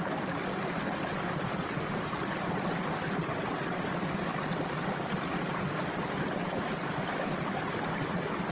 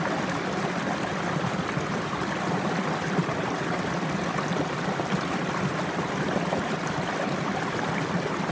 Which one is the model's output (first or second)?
second